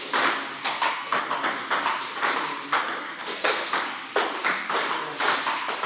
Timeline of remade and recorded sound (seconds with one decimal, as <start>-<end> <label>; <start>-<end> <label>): 0.0-0.6 recorded; 0.6-1.2 remade; 1.2-3.0 recorded; 3.0-3.7 remade; 3.7-5.9 recorded